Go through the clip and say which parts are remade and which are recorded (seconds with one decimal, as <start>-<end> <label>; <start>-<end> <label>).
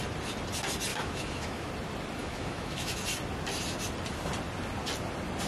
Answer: 0.0-0.9 recorded; 0.9-1.7 remade; 1.7-2.2 recorded; 2.2-3.0 remade; 3.0-5.5 recorded